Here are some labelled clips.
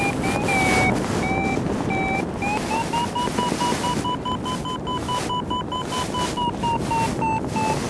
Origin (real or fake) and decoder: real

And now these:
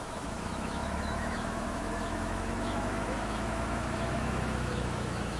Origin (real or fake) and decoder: fake, autoencoder, DAC-VAE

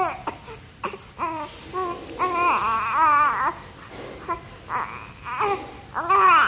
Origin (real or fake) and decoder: real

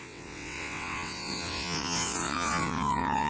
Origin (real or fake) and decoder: fake, vocoder, WaveNeXt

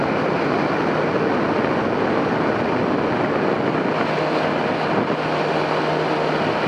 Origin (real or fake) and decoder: real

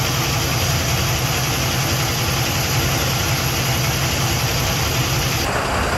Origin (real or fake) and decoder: real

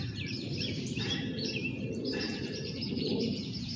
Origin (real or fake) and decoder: fake, vocoder, BigVGAN v2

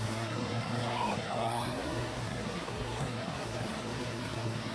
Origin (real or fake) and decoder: fake, codec, SNAC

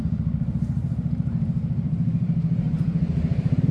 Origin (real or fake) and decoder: fake, vocoder, BigVGAN v2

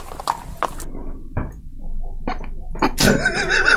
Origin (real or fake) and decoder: real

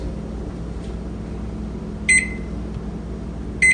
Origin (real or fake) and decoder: real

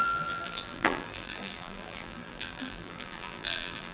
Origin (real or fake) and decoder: fake, vocoder, BigVGAN v2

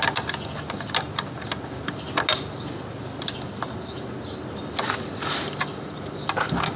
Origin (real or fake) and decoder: real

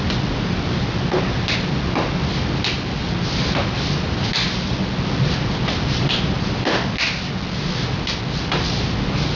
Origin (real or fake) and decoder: real